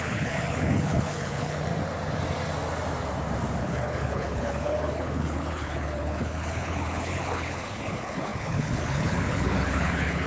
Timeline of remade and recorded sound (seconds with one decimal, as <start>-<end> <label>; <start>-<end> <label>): 0.0-1.7 remade; 1.7-3.6 recorded; 3.6-10.3 remade